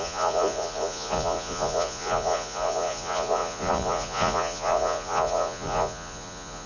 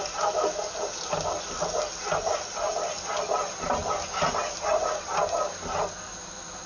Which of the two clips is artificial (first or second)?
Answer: first